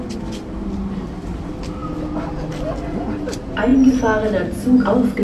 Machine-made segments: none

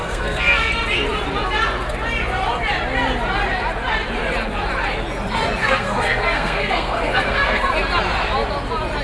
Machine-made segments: 0.0-0.7 (codec, SNAC); 5.6-7.7

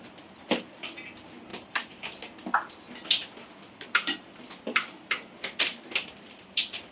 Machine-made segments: none